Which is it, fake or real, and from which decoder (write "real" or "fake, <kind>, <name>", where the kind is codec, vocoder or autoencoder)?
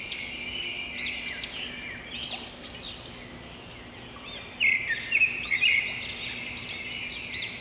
real